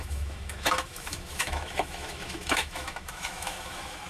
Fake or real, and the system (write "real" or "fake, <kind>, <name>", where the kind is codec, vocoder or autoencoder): fake, autoencoder, DAC-VAE